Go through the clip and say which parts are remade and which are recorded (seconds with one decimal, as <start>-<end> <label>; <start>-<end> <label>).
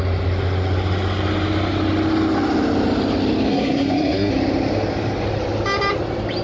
0.0-3.5 recorded; 3.5-4.3 remade; 4.3-6.4 recorded